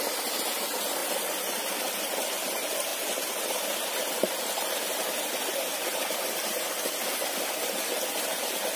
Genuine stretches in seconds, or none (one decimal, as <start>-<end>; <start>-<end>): 0.0-8.8